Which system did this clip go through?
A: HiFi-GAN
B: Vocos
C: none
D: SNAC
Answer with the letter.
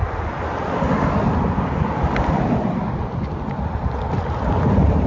C